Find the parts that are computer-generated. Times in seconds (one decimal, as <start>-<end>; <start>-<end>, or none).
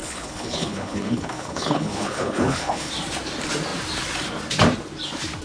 0.0-2.9